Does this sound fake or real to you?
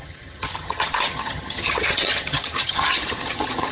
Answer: fake